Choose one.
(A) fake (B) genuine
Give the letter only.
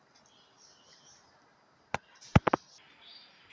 B